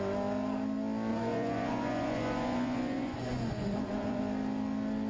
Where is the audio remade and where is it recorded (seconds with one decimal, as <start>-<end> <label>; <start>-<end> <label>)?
0.0-1.1 recorded; 1.1-4.2 remade; 4.2-5.1 recorded